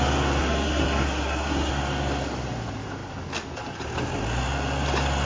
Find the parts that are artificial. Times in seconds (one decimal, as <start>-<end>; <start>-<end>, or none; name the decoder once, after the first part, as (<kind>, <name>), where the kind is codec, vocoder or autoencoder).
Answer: 0.4-1.7 (codec, SNAC)